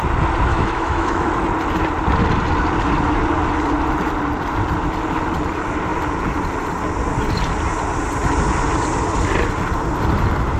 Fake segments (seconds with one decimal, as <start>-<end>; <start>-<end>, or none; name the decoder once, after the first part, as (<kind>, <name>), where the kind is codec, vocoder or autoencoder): 0.5-1.3 (autoencoder, DAC-VAE)